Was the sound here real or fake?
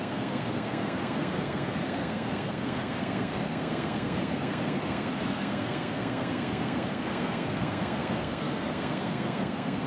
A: fake